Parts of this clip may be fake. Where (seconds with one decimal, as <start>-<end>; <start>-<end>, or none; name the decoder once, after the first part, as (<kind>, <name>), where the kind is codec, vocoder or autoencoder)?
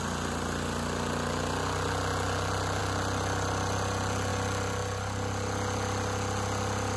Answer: none